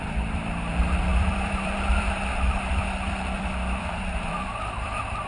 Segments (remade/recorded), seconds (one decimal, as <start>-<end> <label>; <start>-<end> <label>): 0.0-5.3 remade